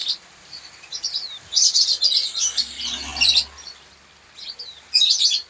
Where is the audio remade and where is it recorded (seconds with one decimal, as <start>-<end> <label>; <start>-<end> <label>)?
0.0-5.5 recorded